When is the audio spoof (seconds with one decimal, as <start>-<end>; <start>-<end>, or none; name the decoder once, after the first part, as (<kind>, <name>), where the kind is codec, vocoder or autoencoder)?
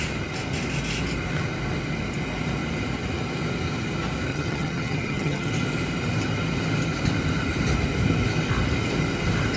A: 4.3-5.5 (vocoder, HiFi-GAN)